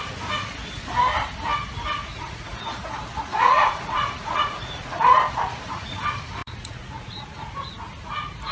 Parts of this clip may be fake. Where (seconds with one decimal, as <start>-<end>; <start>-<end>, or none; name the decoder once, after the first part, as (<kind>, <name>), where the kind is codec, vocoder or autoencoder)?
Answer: 2.0-2.7 (vocoder, Vocos); 3.1-6.0; 6.4-7.2